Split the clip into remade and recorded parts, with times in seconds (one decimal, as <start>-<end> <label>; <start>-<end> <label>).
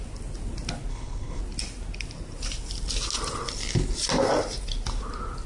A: 0.0-0.9 recorded; 0.9-1.4 remade; 1.4-5.5 recorded